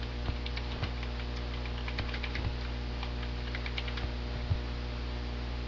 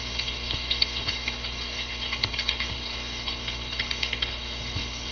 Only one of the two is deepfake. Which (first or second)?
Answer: second